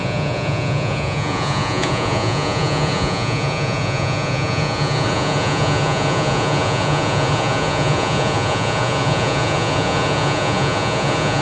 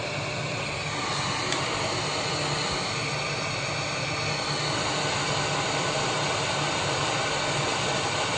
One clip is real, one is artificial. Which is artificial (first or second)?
first